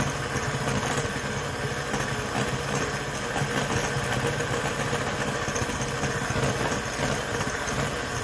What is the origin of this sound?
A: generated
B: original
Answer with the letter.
B